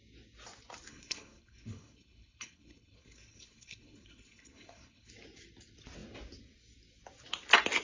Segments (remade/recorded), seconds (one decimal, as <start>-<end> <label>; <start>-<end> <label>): 0.0-0.9 recorded; 0.9-5.1 remade; 5.1-7.8 recorded